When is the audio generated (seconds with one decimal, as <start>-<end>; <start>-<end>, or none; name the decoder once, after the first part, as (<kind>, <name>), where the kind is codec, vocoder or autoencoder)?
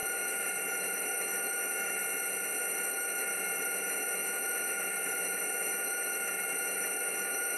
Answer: 0.0-2.0 (autoencoder, DAC-VAE); 2.6-7.6